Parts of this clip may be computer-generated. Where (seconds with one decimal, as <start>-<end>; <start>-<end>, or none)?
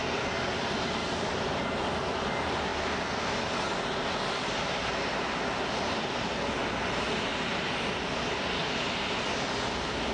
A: 1.1-2.7; 6.8-7.3; 8.3-10.1